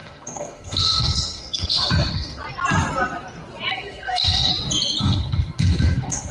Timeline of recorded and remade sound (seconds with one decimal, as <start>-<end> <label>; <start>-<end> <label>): 0.0-2.4 remade; 2.4-3.7 recorded; 3.7-4.5 remade; 4.5-5.0 recorded; 5.0-6.3 remade

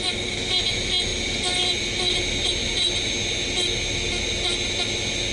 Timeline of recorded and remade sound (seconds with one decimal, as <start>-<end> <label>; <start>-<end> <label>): 0.0-5.3 recorded

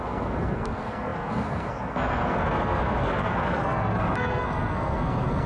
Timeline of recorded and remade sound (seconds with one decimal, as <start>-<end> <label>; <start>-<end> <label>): 0.0-5.5 remade

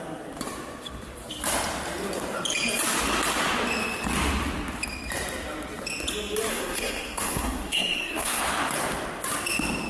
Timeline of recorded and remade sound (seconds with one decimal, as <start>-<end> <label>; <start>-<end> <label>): 0.0-6.5 recorded; 6.5-8.4 remade; 8.4-9.9 recorded

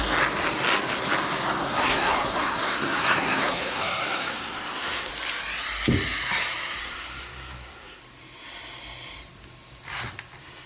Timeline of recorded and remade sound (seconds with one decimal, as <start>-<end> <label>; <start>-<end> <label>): 0.0-1.6 recorded; 1.6-5.1 remade; 5.1-6.8 recorded; 6.8-8.0 remade; 8.0-10.7 recorded

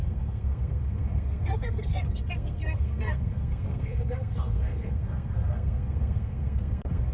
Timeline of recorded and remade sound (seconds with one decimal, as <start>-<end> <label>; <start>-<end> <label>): 0.0-7.1 remade

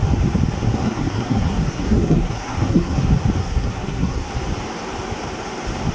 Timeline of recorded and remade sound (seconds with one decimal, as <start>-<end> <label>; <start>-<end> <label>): 0.0-0.7 recorded; 0.7-3.0 remade; 3.0-3.4 recorded; 3.4-4.3 remade; 4.3-5.9 recorded